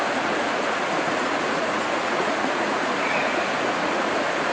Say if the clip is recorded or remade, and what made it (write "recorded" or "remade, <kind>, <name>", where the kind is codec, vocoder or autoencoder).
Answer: remade, vocoder, Vocos